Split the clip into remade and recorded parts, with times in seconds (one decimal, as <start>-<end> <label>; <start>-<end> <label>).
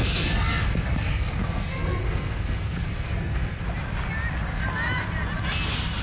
0.0-3.6 remade; 3.6-6.0 recorded